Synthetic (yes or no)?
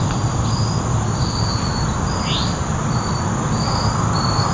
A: no